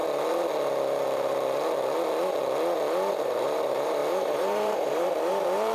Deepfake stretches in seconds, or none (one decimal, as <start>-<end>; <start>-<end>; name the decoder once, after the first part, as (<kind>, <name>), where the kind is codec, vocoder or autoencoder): 3.1-5.7 (vocoder, BigVGAN v2)